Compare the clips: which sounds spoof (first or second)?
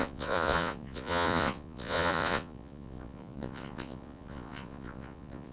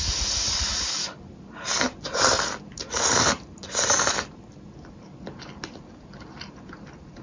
first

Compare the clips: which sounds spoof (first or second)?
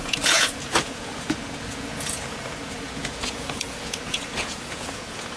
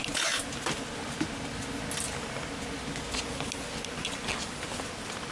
first